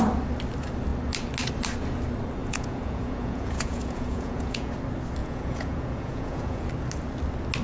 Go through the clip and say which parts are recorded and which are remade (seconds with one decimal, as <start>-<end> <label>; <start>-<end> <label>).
0.0-2.4 recorded; 2.4-4.7 remade; 4.7-5.2 recorded; 5.2-6.7 remade; 6.7-7.6 recorded